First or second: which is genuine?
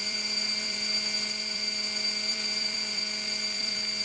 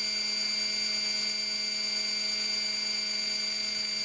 second